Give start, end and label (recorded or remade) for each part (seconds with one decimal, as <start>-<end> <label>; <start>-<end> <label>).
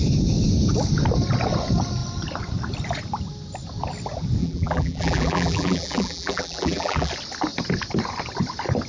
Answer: 0.0-4.4 recorded; 4.4-7.1 remade; 7.1-8.9 recorded